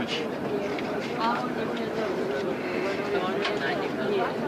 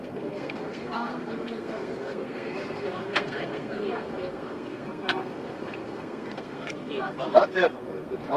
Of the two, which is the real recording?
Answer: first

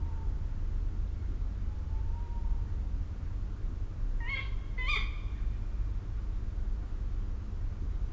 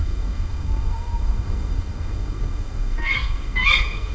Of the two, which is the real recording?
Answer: first